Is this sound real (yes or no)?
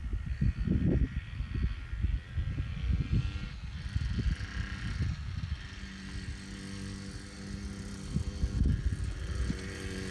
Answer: yes